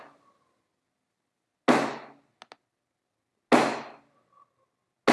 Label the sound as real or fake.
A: real